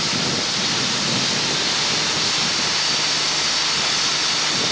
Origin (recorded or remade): recorded